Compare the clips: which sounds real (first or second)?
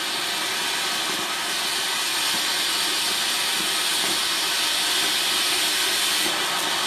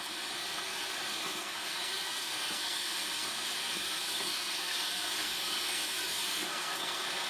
first